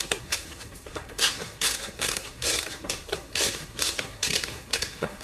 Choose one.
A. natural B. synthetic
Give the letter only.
B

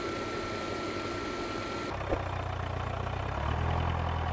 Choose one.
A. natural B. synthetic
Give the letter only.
A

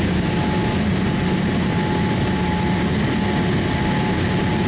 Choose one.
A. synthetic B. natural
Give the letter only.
B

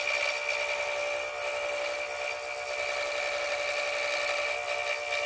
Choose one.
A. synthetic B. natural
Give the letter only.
B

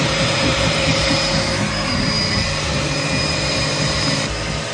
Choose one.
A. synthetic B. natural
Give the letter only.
A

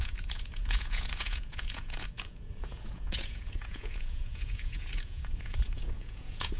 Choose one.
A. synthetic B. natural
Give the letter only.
A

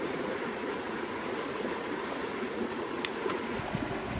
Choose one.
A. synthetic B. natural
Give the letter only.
A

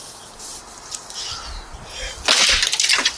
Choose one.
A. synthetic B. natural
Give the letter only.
B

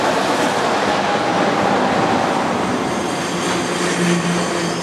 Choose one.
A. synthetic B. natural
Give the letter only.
B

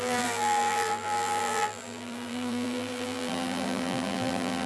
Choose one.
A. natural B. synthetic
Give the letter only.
B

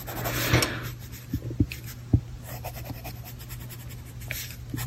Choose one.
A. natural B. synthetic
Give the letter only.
A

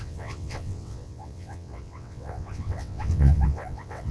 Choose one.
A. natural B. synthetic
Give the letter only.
B